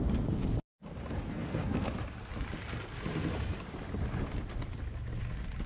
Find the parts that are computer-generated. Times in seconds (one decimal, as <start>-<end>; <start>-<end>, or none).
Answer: 1.3-1.8